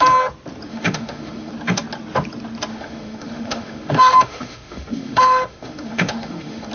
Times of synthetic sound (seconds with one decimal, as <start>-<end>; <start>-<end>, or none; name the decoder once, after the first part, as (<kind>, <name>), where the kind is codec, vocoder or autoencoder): 0.7-1.5 (autoencoder, DAC-VAE); 2.7-6.7